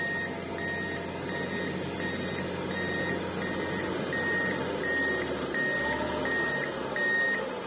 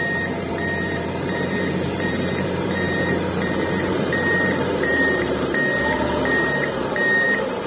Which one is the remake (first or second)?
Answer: second